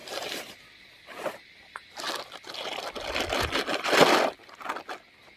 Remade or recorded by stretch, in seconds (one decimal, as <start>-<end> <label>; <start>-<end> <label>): 0.0-5.4 recorded